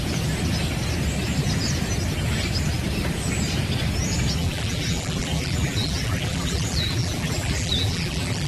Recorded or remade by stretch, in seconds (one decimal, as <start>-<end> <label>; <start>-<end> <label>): 0.0-4.4 recorded; 4.4-8.5 remade